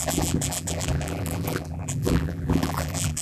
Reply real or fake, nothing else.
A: fake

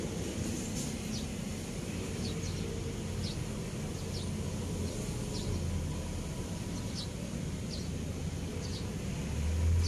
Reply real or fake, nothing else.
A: real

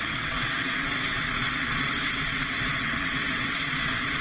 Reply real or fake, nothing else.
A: fake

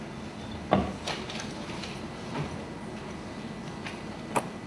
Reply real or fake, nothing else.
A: real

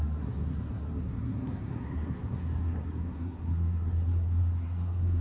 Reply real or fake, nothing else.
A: fake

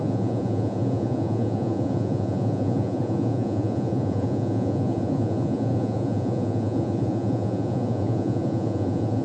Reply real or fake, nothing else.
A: fake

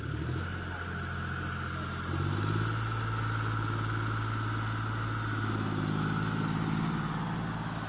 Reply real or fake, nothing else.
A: real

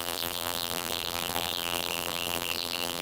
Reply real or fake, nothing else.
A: fake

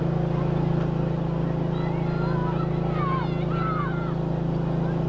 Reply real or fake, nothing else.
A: real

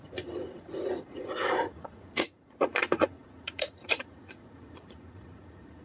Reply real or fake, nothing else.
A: fake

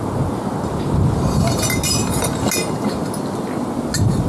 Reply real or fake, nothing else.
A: real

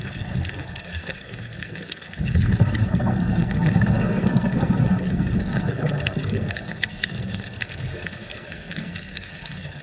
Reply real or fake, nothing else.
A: fake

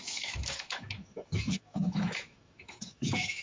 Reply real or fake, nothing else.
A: fake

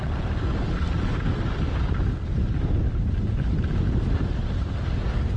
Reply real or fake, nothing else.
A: real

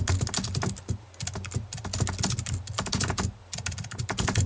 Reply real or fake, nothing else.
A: real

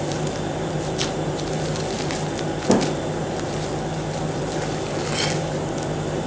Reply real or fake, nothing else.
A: real